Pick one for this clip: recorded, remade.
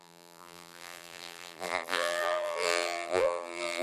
remade